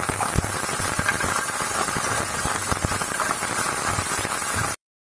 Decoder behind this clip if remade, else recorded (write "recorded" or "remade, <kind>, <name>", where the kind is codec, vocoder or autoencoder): remade, vocoder, BigVGAN v2